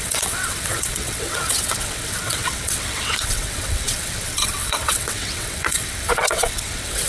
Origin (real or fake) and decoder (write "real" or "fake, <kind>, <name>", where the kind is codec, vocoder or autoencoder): fake, vocoder, WaveNeXt